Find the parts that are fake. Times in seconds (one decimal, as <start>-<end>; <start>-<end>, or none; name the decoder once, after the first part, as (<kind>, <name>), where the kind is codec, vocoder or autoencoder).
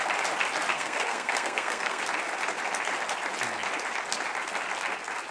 0.7-2.0 (codec, SNAC)